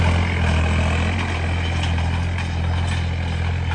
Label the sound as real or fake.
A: real